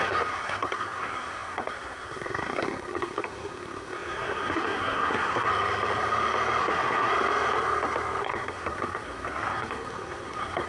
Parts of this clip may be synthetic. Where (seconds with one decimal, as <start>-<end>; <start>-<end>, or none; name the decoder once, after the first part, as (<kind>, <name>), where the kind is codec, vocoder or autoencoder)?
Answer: 0.0-5.5 (codec, SNAC); 6.6-7.1; 8.2-10.7